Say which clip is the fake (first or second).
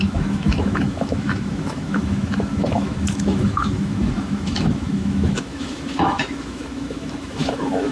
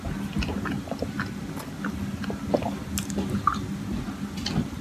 first